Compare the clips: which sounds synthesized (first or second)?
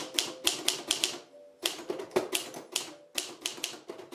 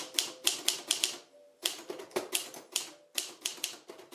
second